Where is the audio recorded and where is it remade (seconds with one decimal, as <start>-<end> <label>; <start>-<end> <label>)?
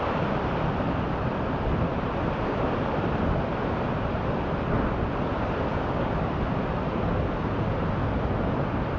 0.0-5.7 recorded; 5.7-6.2 remade; 6.2-9.0 recorded